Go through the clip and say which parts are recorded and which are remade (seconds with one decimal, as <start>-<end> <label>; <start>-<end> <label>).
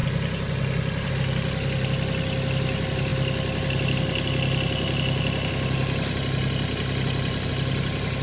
0.0-8.2 recorded